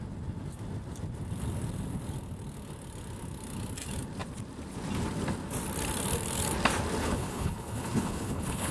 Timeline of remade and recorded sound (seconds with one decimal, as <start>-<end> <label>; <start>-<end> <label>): 0.0-7.0 recorded; 7.0-8.7 remade